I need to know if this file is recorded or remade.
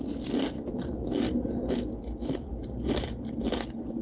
recorded